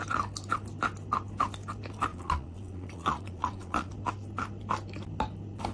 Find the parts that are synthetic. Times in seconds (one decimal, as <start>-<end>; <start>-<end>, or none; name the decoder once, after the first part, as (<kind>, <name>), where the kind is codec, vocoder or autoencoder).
2.1-3.9 (vocoder, Vocos)